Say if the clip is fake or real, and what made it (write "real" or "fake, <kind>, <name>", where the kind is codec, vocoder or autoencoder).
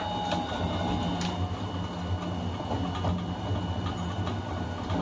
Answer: real